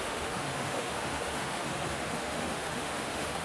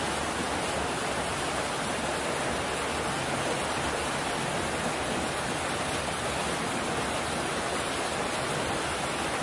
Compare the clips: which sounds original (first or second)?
second